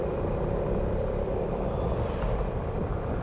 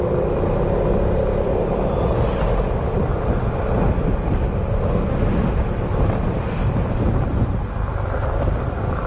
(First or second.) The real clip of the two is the second